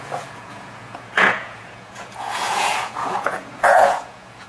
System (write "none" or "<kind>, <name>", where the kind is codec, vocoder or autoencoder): vocoder, Vocos